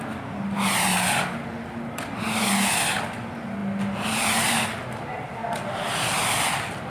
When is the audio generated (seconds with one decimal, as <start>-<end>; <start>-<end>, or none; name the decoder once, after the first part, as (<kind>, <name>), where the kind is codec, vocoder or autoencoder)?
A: none